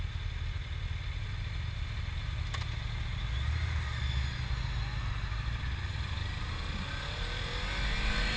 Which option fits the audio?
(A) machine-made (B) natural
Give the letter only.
B